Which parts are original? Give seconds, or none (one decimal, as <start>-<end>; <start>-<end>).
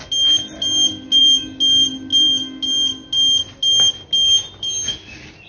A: 0.0-5.5